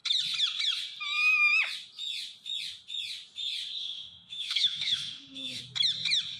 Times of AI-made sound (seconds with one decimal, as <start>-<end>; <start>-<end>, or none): 3.8-5.6

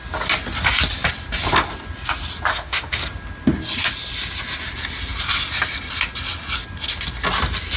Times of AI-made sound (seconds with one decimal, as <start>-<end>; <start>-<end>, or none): 2.5-3.0

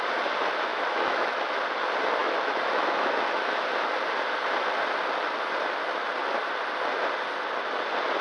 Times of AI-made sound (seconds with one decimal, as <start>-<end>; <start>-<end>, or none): 0.7-1.6; 2.2-3.6

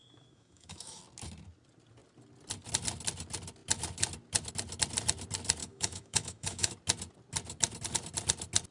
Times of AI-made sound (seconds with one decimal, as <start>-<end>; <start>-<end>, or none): 0.0-1.0; 5.6-6.7

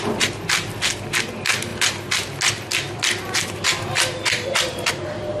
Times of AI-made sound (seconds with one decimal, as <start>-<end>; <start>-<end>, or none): none

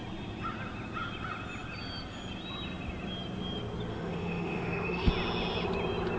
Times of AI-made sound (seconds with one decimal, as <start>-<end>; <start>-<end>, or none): 3.9-5.1

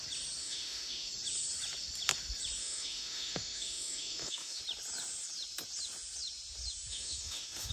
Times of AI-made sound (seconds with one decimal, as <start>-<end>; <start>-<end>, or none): 0.4-1.1; 2.6-4.6; 6.9-7.7